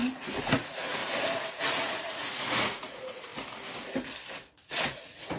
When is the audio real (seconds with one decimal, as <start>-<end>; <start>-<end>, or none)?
1.0-1.6; 3.3-4.5